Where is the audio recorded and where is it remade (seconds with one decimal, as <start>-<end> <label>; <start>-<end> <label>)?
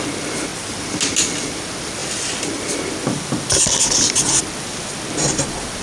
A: 0.0-5.8 recorded